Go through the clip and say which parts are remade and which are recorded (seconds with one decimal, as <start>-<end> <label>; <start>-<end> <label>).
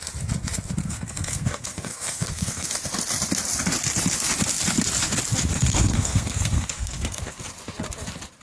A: 0.0-0.8 recorded; 0.8-2.7 remade; 2.7-5.5 recorded; 5.5-7.4 remade; 7.4-8.4 recorded